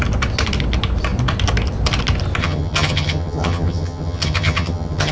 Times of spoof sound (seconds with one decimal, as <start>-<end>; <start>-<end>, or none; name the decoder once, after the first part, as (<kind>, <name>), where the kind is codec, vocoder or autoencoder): 2.4-5.1 (vocoder, HiFi-GAN)